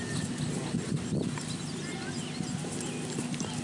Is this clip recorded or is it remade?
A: recorded